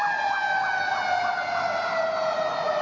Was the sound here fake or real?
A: real